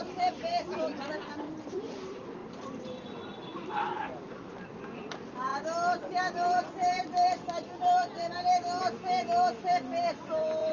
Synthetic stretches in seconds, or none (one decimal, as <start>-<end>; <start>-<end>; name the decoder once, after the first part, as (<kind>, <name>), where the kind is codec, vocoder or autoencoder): 0.0-5.5 (vocoder, BigVGAN v2); 6.2-8.3; 8.8-10.7

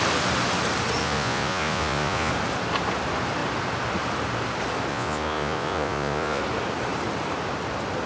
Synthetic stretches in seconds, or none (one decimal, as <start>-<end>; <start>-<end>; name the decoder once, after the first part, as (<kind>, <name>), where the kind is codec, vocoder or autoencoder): 1.0-2.3 (vocoder, Vocos); 4.9-6.4

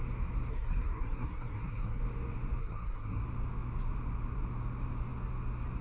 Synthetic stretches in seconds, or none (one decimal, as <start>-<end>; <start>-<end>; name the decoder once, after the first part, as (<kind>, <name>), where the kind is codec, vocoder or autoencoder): 0.5-2.0 (codec, SNAC); 2.6-3.2

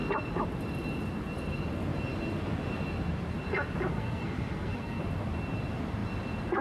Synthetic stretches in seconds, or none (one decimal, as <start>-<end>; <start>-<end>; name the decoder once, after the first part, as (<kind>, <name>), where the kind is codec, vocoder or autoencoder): 3.9-5.0 (codec, SNAC)